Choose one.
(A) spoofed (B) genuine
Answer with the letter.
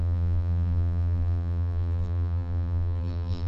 A